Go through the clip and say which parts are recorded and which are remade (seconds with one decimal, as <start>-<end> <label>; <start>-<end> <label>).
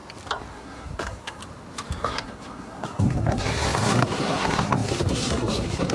0.0-0.5 recorded; 0.5-1.4 remade; 1.4-2.0 recorded; 2.0-5.9 remade